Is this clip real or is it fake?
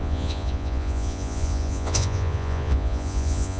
fake